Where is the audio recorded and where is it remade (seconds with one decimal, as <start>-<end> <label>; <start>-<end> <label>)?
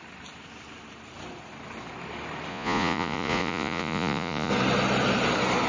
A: 0.0-2.5 recorded; 2.5-4.5 remade; 4.5-5.7 recorded